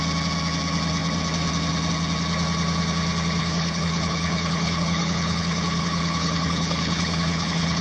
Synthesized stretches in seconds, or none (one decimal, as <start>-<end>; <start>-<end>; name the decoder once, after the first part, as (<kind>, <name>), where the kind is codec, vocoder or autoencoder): 3.4-7.8 (codec, HILCodec)